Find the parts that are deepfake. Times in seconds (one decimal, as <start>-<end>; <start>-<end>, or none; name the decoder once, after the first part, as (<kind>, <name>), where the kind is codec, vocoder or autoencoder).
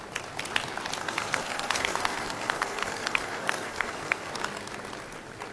1.0-4.3 (codec, SNAC)